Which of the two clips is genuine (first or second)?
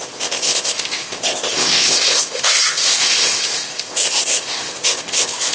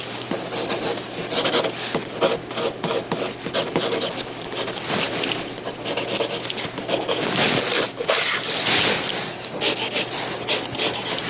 second